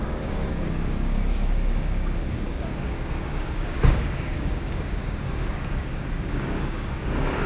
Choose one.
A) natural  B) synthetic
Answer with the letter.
B